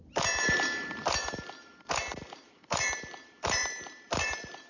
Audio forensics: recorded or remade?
remade